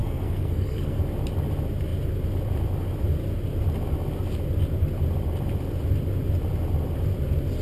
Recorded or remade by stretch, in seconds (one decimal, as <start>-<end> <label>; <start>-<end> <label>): 0.0-1.0 remade; 1.0-7.6 recorded